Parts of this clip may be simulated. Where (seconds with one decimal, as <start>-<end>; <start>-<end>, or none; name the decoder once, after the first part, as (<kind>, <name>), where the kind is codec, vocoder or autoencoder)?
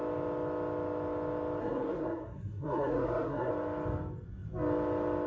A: 1.6-3.5 (codec, SNAC)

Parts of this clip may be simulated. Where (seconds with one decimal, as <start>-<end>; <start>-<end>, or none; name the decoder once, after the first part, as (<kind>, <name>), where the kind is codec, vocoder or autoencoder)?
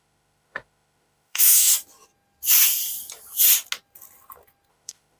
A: 0.0-1.7 (autoencoder, DAC-VAE); 4.7-5.2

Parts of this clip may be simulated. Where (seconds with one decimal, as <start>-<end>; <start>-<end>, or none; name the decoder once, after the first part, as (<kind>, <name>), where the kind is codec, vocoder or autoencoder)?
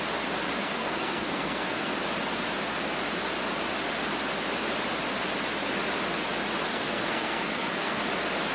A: 0.6-1.9 (codec, SNAC); 6.7-8.0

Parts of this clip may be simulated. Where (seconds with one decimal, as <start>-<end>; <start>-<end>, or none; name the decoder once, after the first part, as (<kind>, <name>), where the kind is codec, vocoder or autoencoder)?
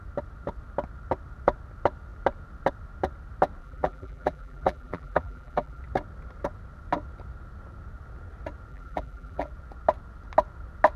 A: 3.6-5.8 (vocoder, BigVGAN v2); 8.7-9.5